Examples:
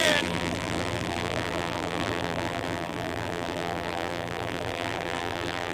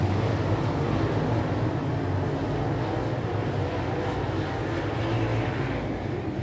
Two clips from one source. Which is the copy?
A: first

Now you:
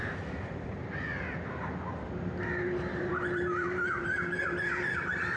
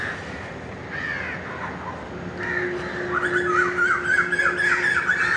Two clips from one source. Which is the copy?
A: first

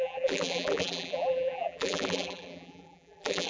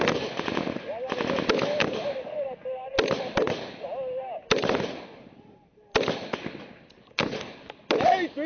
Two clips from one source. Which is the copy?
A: first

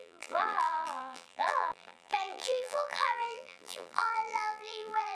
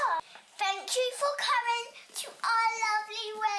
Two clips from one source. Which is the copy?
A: first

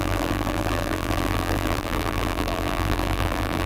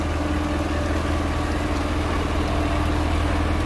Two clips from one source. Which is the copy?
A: first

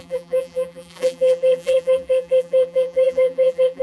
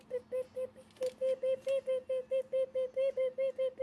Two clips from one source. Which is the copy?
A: first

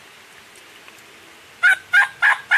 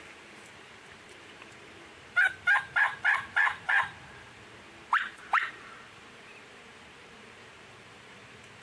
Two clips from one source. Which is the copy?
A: second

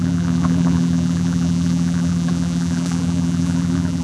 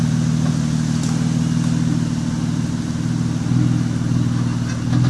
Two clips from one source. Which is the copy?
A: first